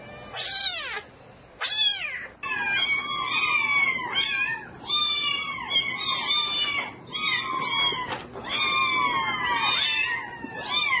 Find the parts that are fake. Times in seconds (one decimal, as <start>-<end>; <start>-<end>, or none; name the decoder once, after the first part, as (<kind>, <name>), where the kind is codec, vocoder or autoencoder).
none